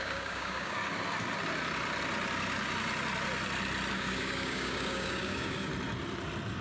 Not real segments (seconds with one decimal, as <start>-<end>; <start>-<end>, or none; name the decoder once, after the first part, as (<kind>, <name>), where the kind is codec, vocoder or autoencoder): 0.0-0.8 (codec, DAC); 3.9-5.7